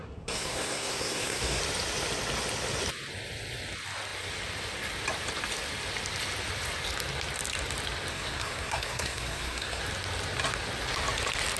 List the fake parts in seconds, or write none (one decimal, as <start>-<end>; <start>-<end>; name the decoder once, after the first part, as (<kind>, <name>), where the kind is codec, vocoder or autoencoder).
0.0-1.6 (codec, SNAC); 8.1-9.8